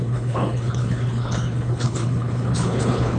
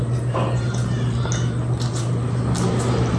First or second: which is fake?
first